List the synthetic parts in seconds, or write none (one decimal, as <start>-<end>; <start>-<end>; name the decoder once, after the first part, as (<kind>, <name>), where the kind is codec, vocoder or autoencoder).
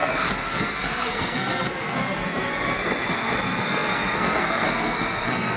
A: 0.0-5.6 (codec, SNAC)